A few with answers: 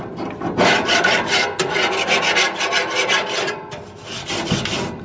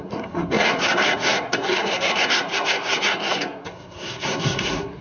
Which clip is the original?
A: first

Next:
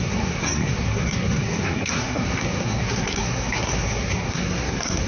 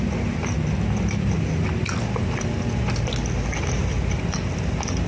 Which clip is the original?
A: second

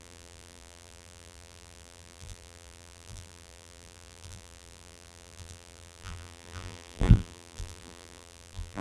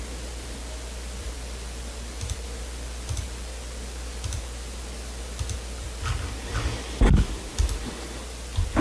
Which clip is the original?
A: second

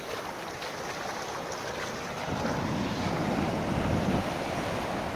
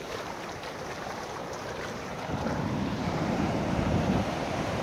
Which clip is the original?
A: first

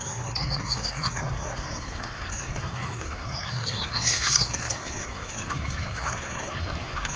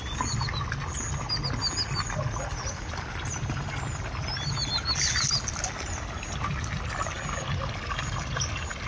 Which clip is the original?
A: second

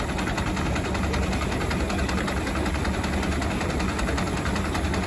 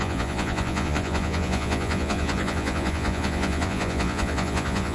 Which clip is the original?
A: first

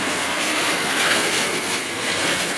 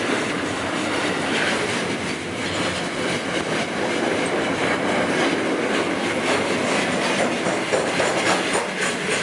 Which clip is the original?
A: second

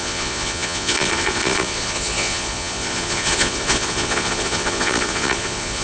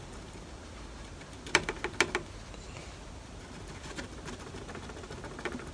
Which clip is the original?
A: second